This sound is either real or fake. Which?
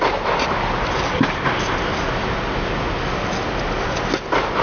real